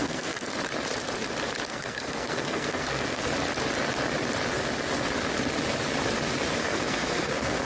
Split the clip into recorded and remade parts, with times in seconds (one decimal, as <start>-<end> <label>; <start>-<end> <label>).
0.0-0.5 remade; 0.5-1.7 recorded; 1.7-3.3 remade; 3.3-6.6 recorded; 6.6-7.7 remade